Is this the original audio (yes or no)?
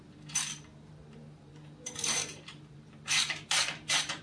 no